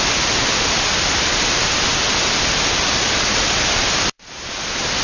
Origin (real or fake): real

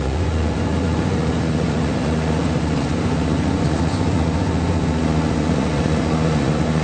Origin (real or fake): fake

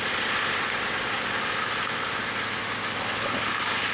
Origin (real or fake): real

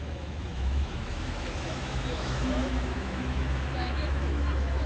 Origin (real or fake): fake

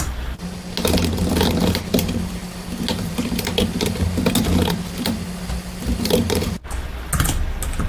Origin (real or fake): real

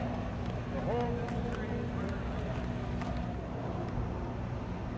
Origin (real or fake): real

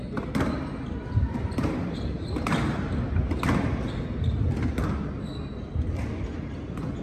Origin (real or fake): real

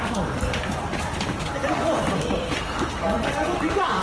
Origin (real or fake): fake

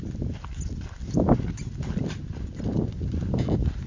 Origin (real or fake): real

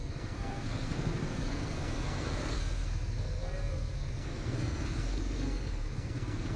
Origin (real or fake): fake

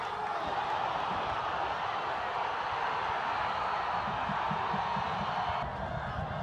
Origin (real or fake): real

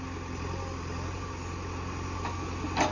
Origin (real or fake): real